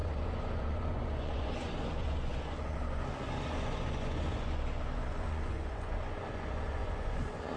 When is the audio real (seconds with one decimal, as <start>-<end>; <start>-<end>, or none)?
none